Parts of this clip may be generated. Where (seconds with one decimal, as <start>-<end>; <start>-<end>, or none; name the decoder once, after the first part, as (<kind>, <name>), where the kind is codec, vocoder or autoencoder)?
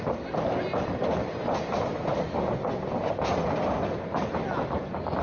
none